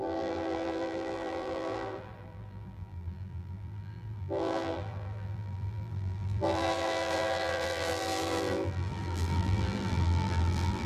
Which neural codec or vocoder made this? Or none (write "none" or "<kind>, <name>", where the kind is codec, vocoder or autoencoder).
vocoder, BigVGAN v2